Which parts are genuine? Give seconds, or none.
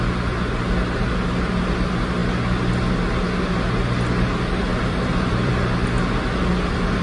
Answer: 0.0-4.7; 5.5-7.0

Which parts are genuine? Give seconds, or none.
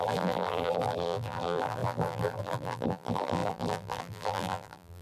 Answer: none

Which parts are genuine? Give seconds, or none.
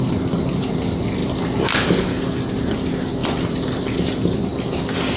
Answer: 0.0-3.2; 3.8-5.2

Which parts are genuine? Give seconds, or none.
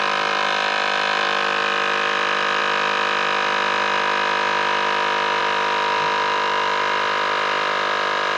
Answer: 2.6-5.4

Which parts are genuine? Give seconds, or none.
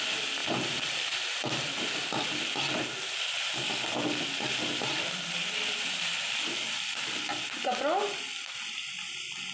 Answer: 0.0-9.5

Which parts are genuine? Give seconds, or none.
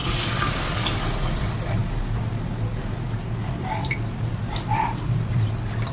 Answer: 0.0-1.4; 1.8-5.3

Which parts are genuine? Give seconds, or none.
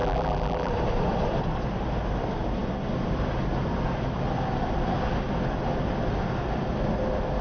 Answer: 0.7-7.4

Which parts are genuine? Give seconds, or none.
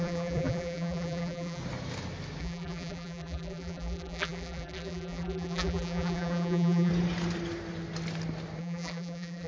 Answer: 1.6-2.4; 6.9-8.6